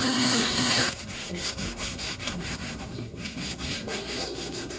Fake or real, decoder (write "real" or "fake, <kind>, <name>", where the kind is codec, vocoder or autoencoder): fake, codec, SNAC